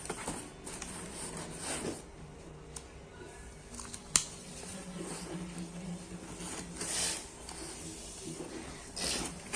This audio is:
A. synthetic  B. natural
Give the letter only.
B